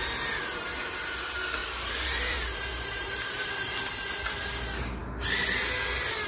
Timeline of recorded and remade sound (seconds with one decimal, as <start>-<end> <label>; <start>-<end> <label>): 0.0-1.6 recorded; 1.6-3.9 remade; 3.9-6.3 recorded